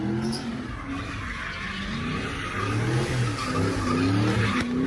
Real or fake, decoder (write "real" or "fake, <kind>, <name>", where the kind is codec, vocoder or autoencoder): real